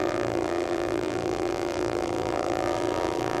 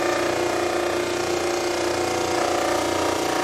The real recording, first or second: second